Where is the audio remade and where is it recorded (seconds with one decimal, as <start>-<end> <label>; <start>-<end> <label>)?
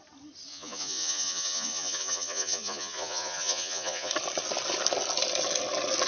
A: 0.0-0.5 recorded; 0.5-4.1 remade; 4.1-6.1 recorded